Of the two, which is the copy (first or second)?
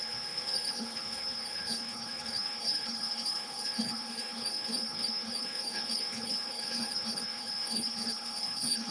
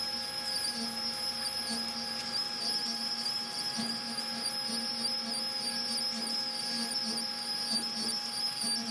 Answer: first